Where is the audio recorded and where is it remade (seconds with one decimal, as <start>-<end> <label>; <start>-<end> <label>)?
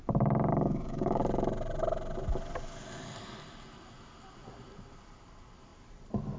0.0-0.5 recorded; 0.5-1.2 remade; 1.2-6.4 recorded